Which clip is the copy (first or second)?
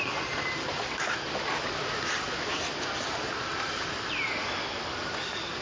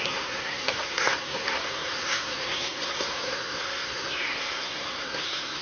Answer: second